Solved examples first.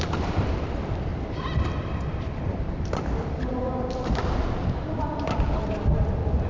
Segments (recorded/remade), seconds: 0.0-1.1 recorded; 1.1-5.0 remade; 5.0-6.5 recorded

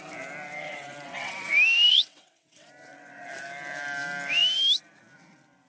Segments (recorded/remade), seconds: 0.0-0.6 recorded; 0.6-1.5 remade; 1.5-1.9 recorded; 1.9-2.7 remade; 2.7-5.7 recorded

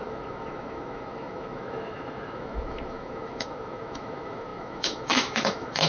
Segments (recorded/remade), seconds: 0.0-5.9 remade

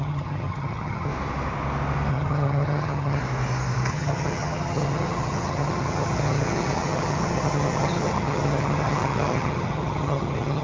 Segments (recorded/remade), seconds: 0.0-1.1 remade; 1.1-2.1 recorded; 2.1-3.2 remade; 3.2-3.9 recorded; 3.9-10.6 remade

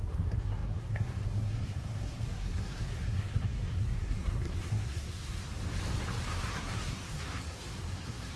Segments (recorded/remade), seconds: 0.0-5.5 remade; 5.5-6.3 recorded; 6.3-8.4 remade

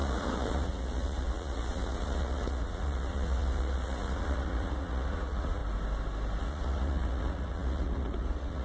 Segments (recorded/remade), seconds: 0.0-5.6 remade; 5.6-6.4 recorded; 6.4-8.6 remade

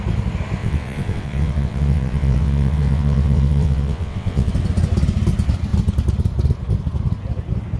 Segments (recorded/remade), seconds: 0.0-0.6 recorded; 0.6-4.5 remade; 4.5-7.8 recorded

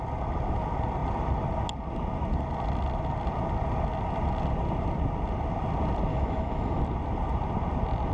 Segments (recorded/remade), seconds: 0.0-6.1 recorded; 6.1-6.8 remade; 6.8-8.1 recorded